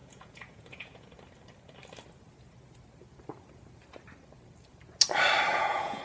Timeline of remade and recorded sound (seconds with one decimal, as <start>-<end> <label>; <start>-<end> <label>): 0.0-1.1 remade; 1.1-5.5 recorded; 5.5-6.0 remade